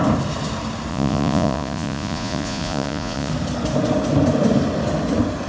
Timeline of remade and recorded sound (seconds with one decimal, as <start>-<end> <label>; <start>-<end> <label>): 0.0-0.9 recorded; 0.9-3.3 remade; 3.3-5.5 recorded